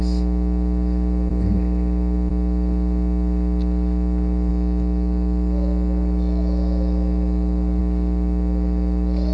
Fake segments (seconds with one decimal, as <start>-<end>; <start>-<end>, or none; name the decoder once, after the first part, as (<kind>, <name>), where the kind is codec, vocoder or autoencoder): 4.5-7.8 (autoencoder, DAC-VAE)